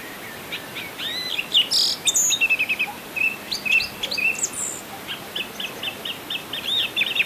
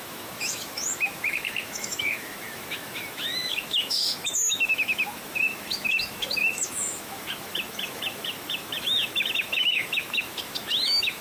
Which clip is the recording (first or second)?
first